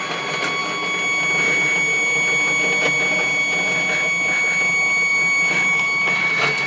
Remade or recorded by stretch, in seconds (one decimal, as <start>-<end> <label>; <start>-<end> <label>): 0.0-5.1 recorded; 5.1-6.7 remade